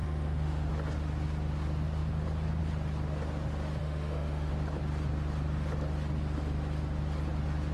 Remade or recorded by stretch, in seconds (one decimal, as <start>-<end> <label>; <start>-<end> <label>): 0.0-0.7 remade; 0.7-3.8 recorded; 3.8-4.5 remade; 4.5-7.7 recorded